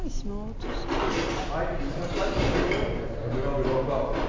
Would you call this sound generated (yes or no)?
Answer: no